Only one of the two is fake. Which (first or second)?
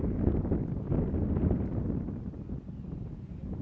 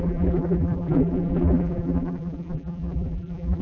second